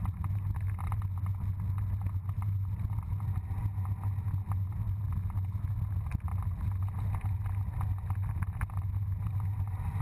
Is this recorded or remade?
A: recorded